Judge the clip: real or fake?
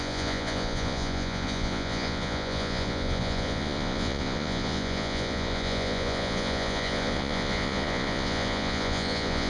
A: fake